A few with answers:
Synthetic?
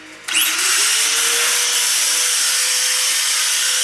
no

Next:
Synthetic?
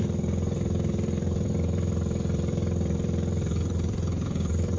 yes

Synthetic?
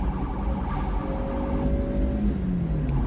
no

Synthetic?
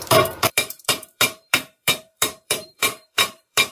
yes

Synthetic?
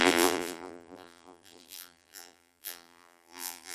yes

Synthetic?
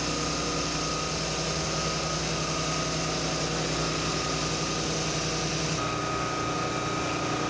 no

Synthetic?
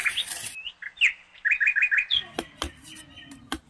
no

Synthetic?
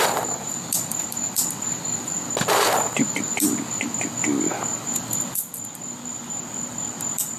yes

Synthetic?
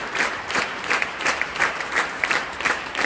yes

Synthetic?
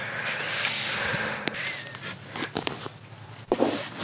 yes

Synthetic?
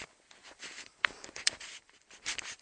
yes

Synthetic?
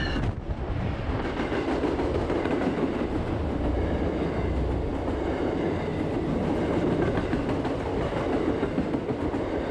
no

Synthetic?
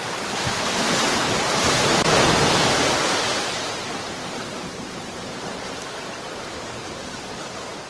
yes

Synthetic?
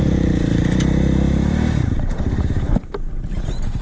yes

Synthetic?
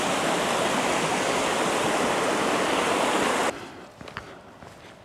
no